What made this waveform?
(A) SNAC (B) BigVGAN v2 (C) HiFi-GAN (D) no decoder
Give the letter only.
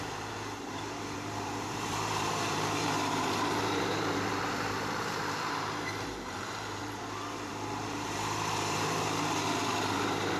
B